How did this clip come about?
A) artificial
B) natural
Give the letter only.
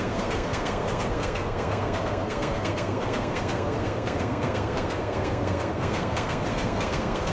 A